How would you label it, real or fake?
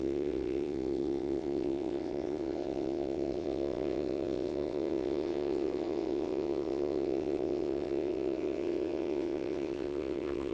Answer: fake